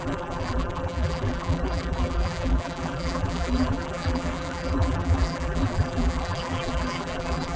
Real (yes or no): no